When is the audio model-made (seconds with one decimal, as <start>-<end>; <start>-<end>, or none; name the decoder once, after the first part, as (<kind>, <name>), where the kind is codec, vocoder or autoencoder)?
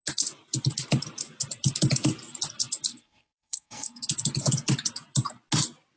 2.9-4.1 (codec, SNAC)